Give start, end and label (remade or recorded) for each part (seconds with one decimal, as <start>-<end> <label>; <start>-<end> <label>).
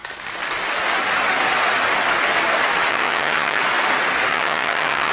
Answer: 0.0-2.9 recorded; 2.9-3.6 remade; 3.6-4.3 recorded; 4.3-5.1 remade